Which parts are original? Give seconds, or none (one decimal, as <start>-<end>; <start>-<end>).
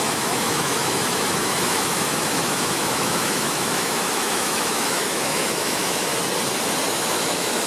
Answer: 6.1-6.9